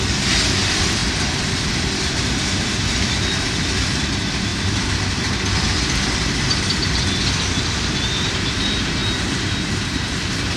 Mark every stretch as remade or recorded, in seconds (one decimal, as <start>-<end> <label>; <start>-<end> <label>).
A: 0.0-10.6 recorded